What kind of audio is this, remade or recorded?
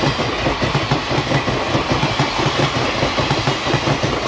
recorded